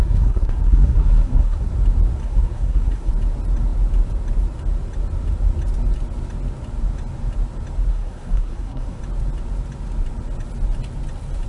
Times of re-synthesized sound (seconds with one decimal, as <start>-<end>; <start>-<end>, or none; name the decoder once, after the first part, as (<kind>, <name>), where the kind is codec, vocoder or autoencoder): 0.0-1.7 (codec, SNAC); 2.2-3.1; 7.9-9.0